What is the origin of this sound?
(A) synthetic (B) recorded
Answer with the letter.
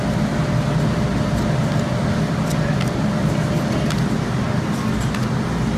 B